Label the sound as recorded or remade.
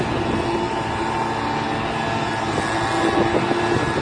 recorded